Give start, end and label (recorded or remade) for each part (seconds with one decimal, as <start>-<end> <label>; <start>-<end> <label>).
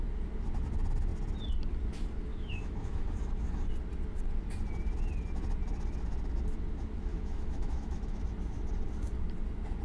0.0-2.3 recorded; 2.3-3.1 remade; 3.1-7.1 recorded; 7.1-8.2 remade; 8.2-9.8 recorded